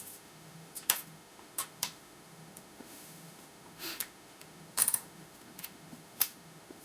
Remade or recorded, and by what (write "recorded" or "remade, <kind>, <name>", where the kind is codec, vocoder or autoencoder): remade, autoencoder, DAC-VAE